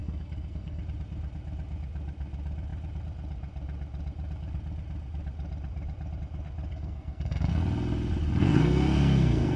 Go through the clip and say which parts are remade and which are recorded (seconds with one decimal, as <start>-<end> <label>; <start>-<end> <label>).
0.0-0.8 remade; 0.8-6.7 recorded; 6.7-7.6 remade; 7.6-8.4 recorded; 8.4-9.6 remade